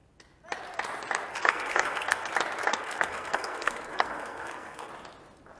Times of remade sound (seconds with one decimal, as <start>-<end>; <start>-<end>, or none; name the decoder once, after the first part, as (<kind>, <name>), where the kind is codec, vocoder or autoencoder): 1.3-2.3 (codec, SNAC); 2.7-4.9